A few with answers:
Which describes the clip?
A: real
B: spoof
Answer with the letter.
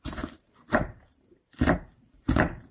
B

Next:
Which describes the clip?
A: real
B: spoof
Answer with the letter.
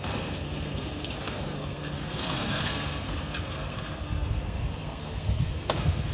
B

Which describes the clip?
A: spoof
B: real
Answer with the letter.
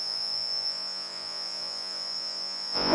A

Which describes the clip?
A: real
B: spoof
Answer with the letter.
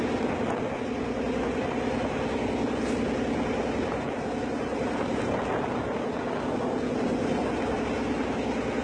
A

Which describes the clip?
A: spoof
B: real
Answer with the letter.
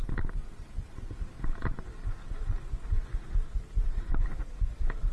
B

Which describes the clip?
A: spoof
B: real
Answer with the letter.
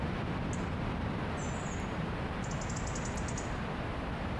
B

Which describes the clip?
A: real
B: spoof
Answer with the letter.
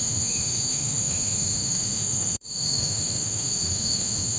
B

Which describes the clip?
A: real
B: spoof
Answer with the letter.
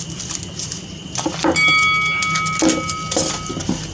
A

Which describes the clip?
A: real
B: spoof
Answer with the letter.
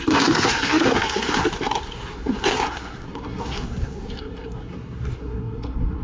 B